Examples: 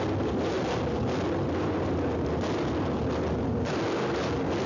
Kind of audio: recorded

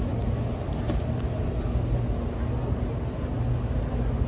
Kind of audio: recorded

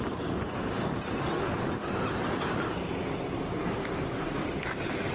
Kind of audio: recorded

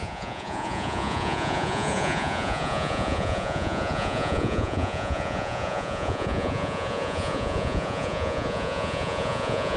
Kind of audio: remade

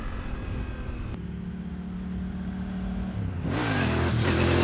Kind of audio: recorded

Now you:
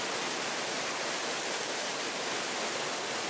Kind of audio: recorded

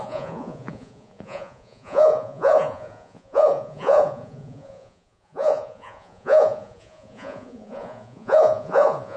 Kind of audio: remade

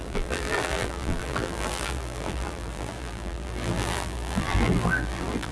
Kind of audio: remade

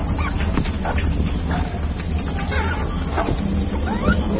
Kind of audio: recorded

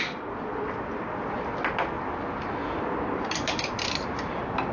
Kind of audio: recorded